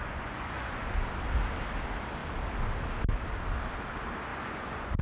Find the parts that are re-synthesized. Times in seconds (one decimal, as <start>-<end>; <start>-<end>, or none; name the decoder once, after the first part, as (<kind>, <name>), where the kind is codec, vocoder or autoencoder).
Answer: 0.0-0.9 (vocoder, Vocos); 4.3-5.0